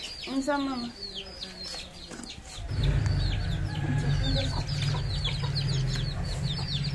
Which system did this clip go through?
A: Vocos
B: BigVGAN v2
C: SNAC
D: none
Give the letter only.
D